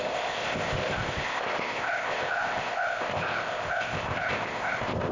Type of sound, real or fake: fake